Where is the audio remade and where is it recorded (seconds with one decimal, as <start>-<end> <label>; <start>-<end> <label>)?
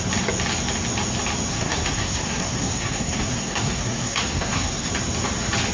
0.0-1.5 recorded; 1.5-4.9 remade; 4.9-5.7 recorded